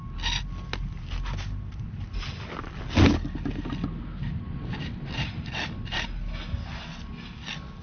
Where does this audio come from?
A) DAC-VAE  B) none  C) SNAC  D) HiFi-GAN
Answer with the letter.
B